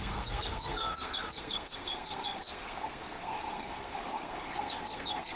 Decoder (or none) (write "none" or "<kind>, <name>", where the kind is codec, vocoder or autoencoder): codec, SNAC